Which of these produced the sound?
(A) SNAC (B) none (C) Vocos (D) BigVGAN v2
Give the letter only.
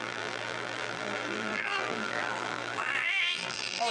D